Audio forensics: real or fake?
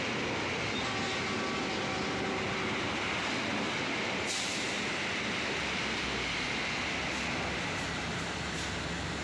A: real